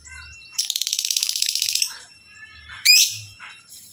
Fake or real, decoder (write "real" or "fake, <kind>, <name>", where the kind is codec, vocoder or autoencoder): fake, vocoder, BigVGAN v2